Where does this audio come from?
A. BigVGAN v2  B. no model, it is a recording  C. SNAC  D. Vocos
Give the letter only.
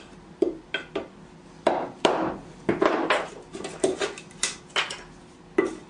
B